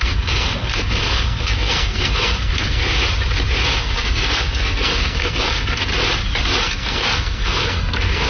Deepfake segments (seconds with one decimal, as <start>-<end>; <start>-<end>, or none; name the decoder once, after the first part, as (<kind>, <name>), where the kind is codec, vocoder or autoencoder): 0.0-2.8 (codec, SNAC); 3.8-5.9; 6.6-8.3

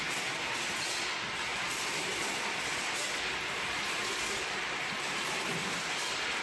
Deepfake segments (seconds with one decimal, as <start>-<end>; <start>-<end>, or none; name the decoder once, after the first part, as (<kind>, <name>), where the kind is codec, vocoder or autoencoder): 1.5-2.0 (vocoder, BigVGAN v2); 3.3-6.4

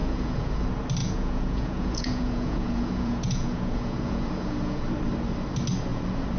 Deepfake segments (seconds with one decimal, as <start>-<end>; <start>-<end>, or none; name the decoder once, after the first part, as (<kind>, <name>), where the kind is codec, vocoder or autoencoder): 0.0-0.5 (vocoder, Vocos); 1.0-4.8

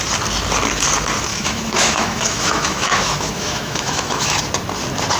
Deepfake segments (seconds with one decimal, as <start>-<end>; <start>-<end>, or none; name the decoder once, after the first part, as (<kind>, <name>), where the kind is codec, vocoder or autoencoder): 1.3-4.4 (autoencoder, DAC-VAE)

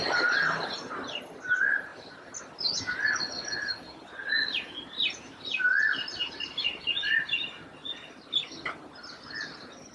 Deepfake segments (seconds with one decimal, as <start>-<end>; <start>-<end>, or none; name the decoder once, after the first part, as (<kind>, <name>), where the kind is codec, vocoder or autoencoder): none

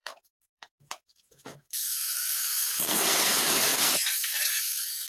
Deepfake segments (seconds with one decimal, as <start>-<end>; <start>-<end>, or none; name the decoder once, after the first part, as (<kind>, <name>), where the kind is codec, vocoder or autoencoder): 0.0-5.1 (codec, SNAC)